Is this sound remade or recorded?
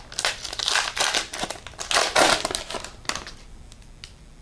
recorded